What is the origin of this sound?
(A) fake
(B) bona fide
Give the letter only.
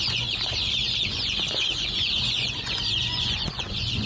A